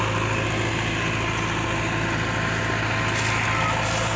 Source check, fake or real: real